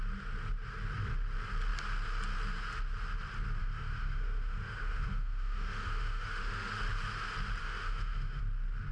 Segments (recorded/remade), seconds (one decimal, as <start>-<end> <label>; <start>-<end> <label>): 0.0-3.6 recorded; 3.6-6.7 remade; 6.7-7.6 recorded; 7.6-8.4 remade; 8.4-8.9 recorded